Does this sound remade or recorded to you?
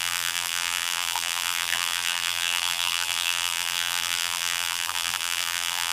remade